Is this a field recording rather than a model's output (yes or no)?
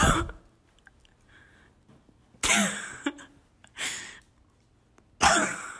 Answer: yes